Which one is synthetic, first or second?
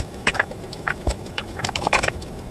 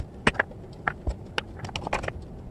first